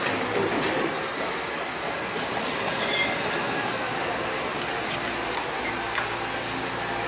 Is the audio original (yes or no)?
yes